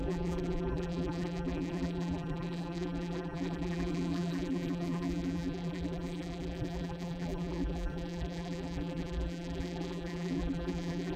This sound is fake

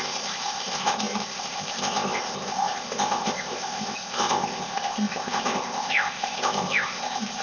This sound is fake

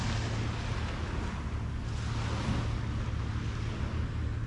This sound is real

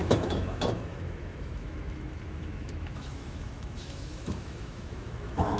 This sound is fake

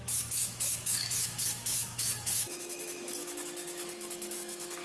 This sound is fake